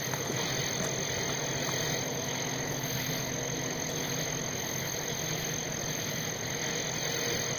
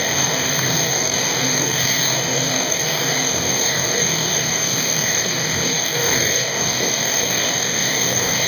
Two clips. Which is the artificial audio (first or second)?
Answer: second